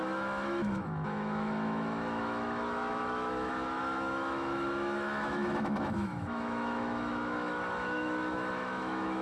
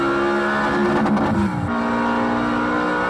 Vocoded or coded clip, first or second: first